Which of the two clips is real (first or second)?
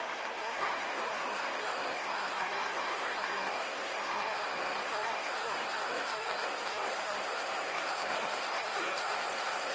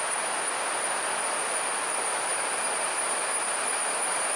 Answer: second